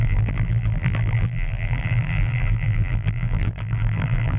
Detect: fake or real fake